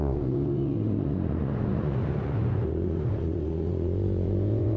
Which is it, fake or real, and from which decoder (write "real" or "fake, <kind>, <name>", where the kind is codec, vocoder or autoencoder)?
fake, vocoder, Vocos